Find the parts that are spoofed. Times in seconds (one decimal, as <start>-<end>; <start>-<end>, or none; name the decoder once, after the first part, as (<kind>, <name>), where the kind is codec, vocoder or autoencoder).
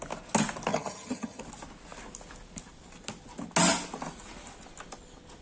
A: 0.7-1.4 (vocoder, HiFi-GAN)